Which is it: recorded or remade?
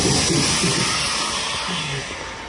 recorded